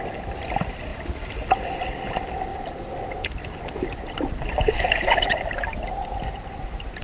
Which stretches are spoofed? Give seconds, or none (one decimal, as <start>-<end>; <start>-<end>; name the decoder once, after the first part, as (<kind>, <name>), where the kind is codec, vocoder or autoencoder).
none